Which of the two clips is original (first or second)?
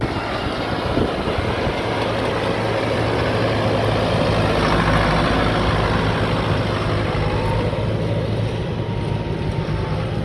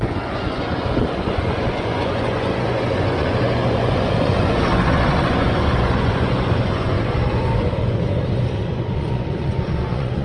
first